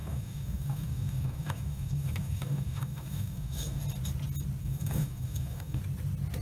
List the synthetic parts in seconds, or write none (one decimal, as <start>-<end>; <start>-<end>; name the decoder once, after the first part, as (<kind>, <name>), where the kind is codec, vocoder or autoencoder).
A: 0.0-3.8 (codec, DAC); 4.6-5.8